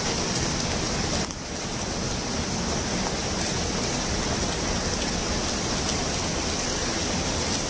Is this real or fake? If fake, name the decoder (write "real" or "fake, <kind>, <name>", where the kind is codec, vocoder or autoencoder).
real